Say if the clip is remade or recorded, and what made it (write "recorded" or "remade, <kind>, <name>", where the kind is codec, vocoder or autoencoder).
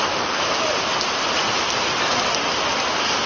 recorded